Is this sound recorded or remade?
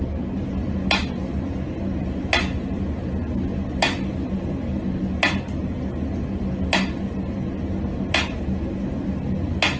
recorded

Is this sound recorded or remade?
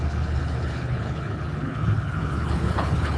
remade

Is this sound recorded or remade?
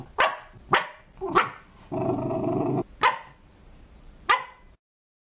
recorded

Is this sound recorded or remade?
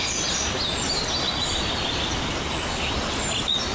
recorded